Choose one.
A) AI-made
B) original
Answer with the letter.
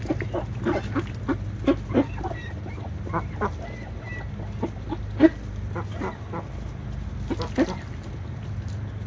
B